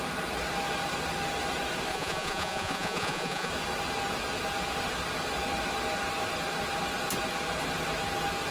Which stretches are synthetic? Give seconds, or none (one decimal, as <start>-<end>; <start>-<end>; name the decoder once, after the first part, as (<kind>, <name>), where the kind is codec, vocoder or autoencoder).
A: 1.9-3.5 (vocoder, Vocos)

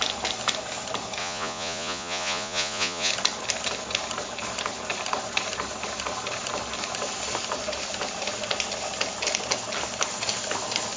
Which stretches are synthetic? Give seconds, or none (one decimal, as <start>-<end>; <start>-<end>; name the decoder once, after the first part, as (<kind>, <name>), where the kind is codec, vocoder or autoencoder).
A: 1.2-3.1 (vocoder, Vocos)